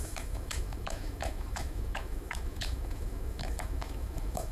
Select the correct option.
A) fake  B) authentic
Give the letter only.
A